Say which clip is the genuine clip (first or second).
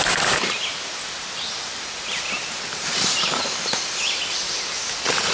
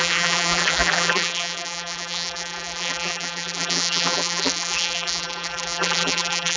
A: first